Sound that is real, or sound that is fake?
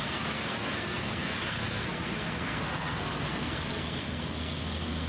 fake